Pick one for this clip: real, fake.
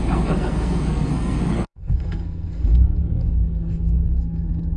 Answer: fake